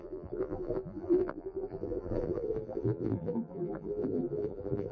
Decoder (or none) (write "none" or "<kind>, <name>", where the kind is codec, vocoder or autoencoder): vocoder, BigVGAN v2